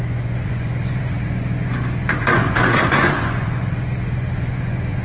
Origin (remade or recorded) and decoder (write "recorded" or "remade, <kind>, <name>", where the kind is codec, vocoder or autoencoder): remade, vocoder, Vocos